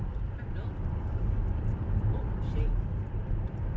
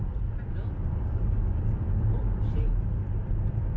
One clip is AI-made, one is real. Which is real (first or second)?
second